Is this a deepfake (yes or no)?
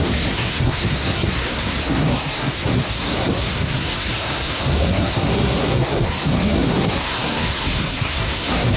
yes